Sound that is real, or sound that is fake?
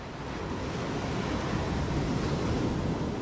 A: real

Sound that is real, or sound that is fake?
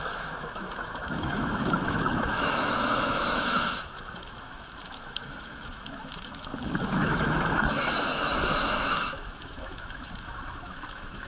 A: fake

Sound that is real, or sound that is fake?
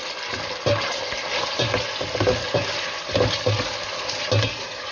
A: real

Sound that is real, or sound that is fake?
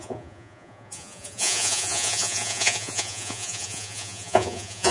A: fake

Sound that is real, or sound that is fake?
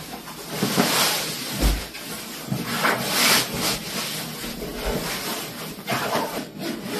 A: real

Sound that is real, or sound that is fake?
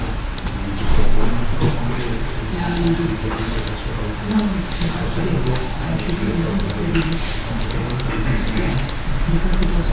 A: real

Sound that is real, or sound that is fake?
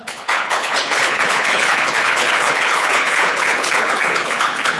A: fake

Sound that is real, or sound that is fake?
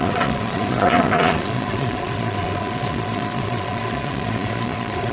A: fake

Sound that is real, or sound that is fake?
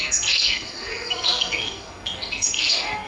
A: fake